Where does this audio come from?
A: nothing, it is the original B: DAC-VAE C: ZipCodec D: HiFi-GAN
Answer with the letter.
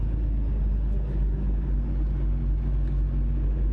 A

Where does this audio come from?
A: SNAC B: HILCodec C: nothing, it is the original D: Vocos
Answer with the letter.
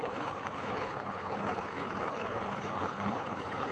B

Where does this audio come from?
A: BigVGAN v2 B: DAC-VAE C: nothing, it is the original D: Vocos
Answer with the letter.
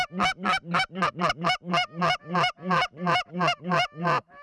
C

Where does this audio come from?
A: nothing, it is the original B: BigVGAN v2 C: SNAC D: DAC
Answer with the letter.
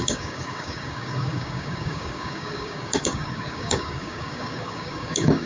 D